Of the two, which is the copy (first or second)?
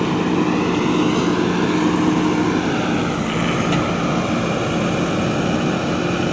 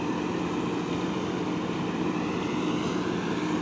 second